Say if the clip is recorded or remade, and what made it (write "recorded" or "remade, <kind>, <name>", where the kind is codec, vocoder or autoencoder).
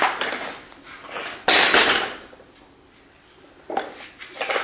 recorded